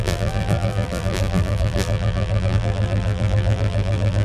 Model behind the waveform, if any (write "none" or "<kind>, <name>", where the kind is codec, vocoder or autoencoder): vocoder, BigVGAN v2